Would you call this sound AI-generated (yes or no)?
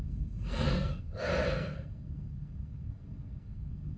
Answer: yes